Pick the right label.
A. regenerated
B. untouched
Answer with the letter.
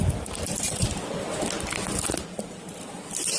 B